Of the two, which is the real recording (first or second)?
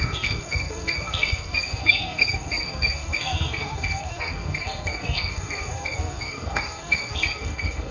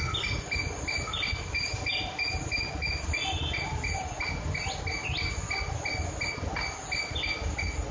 second